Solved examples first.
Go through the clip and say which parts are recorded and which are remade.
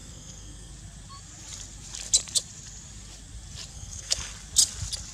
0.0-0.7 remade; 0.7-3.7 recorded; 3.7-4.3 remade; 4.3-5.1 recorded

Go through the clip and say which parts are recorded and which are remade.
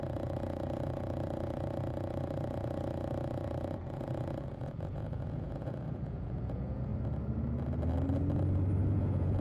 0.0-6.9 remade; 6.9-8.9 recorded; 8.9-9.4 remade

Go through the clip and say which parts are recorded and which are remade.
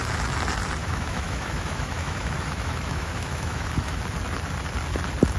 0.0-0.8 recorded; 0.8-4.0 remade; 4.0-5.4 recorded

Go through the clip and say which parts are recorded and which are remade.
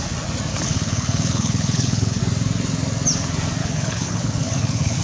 0.0-0.5 recorded; 0.5-2.2 remade; 2.2-3.6 recorded; 3.6-5.0 remade